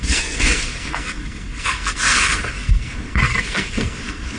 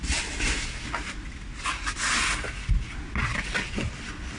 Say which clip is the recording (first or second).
second